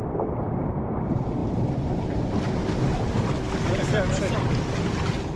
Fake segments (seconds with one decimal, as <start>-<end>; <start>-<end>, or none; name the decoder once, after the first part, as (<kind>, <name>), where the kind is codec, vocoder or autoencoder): none